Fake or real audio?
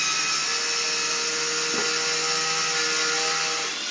real